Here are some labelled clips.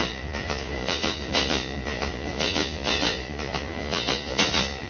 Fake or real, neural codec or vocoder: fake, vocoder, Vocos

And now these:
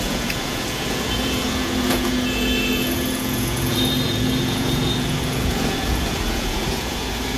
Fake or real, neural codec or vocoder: fake, vocoder, Vocos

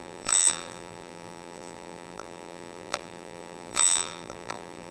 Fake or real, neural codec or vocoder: fake, vocoder, BigVGAN v2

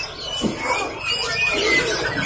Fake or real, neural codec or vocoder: real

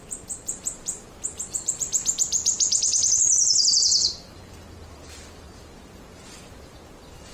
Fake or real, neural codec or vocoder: fake, vocoder, BigVGAN v2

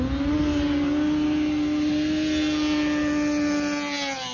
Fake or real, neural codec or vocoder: real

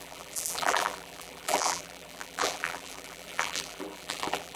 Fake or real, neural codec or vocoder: fake, vocoder, BigVGAN v2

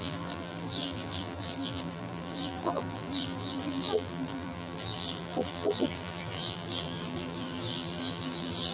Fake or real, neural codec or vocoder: fake, vocoder, BigVGAN v2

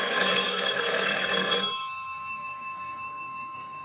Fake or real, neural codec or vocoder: fake, codec, SNAC